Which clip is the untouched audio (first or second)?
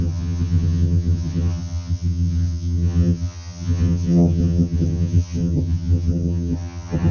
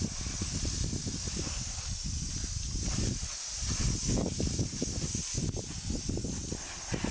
second